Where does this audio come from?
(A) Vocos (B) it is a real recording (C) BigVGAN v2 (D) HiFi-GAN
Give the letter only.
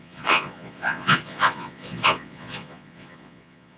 A